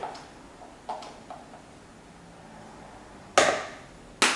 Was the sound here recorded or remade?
recorded